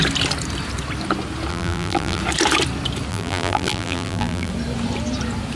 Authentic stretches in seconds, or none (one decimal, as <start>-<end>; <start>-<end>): 0.0-1.5; 2.2-3.1; 4.5-5.6

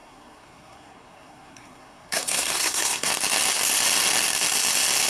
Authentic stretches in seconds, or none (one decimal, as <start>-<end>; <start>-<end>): 3.1-5.1